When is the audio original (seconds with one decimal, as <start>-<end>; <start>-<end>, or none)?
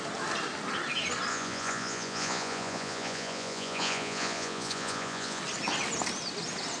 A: 0.0-1.3; 5.4-6.8